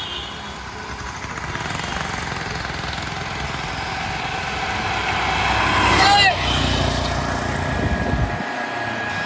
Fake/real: real